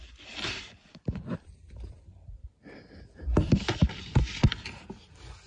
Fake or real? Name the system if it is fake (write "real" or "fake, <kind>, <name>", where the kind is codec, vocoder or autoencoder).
fake, vocoder, BigVGAN v2